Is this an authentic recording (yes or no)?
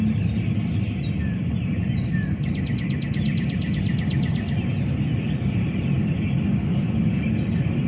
yes